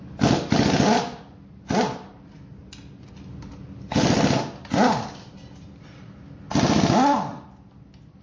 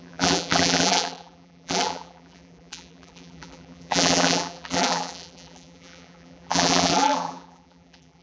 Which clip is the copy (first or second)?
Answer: second